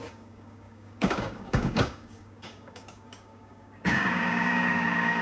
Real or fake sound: fake